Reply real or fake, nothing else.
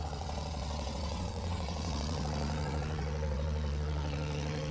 fake